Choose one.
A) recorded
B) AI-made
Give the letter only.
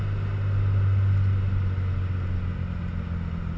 A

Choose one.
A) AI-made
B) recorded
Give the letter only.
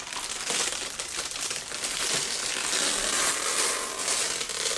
B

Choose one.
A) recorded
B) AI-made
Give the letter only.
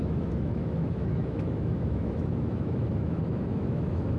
B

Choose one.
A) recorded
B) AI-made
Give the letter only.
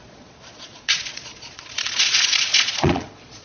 B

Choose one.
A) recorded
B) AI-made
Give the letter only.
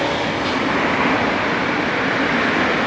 B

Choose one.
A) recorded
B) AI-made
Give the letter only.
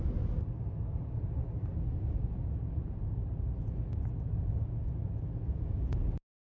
A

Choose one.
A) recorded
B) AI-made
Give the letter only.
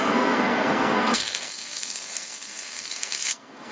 B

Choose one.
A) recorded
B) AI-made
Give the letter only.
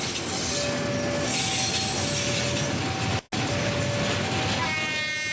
A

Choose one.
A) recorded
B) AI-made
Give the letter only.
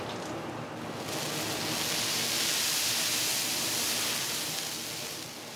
A